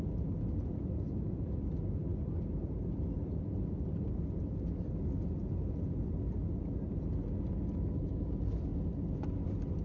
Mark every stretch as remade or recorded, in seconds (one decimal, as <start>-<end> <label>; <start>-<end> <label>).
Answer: 0.0-9.8 recorded